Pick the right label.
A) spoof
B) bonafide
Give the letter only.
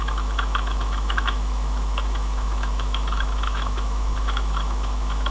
A